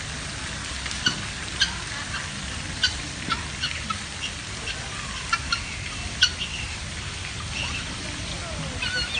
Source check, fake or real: real